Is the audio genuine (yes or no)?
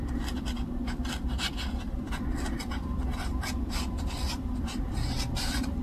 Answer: no